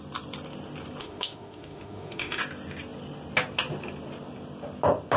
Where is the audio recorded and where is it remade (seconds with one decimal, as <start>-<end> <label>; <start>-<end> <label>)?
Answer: 0.0-1.0 recorded; 1.0-2.4 remade; 2.4-5.2 recorded